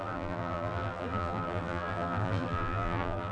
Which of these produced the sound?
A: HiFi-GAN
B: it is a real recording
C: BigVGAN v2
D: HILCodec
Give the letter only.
C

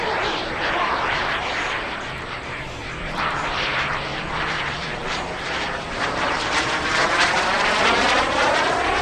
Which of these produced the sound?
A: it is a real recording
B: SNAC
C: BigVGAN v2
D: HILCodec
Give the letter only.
C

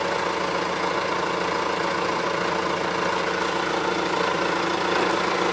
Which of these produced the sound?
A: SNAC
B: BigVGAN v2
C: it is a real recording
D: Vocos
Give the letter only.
C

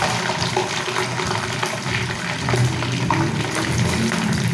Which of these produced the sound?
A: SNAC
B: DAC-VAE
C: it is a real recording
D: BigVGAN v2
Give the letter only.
C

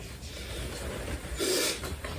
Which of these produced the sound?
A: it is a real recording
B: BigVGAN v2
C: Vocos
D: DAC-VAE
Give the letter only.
A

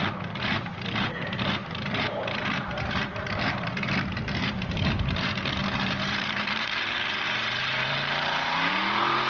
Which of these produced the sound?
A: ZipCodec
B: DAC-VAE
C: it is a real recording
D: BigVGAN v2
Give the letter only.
D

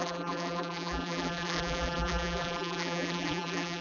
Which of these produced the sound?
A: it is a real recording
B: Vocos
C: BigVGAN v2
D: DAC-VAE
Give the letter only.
C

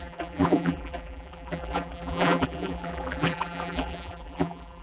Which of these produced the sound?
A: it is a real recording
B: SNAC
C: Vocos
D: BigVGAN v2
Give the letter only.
D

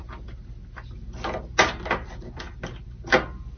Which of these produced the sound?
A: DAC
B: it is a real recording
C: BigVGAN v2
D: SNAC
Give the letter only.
B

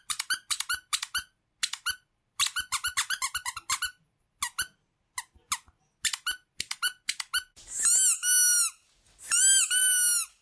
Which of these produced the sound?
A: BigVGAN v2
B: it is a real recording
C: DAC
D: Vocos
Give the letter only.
B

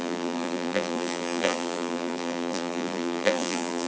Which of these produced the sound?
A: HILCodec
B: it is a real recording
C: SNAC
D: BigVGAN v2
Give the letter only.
D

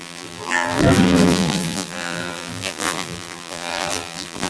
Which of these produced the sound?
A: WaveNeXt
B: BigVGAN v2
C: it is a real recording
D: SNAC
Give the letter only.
B